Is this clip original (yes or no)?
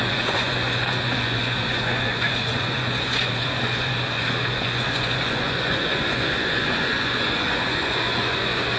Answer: no